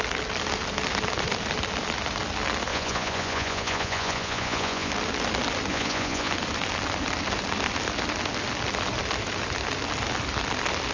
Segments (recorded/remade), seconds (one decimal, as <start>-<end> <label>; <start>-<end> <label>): 0.0-2.7 recorded; 2.7-4.9 remade; 4.9-5.7 recorded; 5.7-6.3 remade; 6.3-10.9 recorded